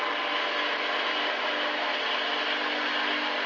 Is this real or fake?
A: real